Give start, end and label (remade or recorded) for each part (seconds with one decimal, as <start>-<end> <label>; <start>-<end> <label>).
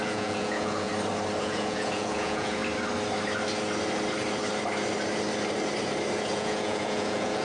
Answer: 0.0-0.9 remade; 0.9-1.4 recorded; 1.4-2.6 remade; 2.6-6.2 recorded; 6.2-7.4 remade